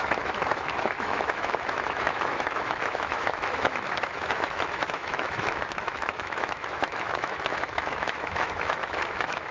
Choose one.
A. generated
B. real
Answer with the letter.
A